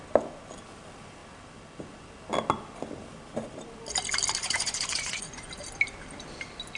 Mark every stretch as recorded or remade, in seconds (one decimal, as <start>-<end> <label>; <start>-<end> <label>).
0.0-4.4 recorded; 4.4-5.5 remade; 5.5-6.8 recorded